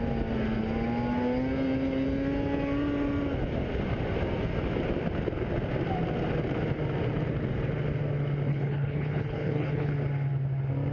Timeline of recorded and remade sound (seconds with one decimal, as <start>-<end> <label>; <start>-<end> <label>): 0.0-8.5 recorded; 8.5-9.9 remade; 9.9-10.9 recorded